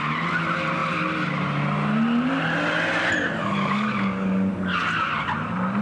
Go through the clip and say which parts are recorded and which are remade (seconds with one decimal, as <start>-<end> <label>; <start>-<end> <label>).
0.0-3.4 recorded; 3.4-4.5 remade; 4.5-5.8 recorded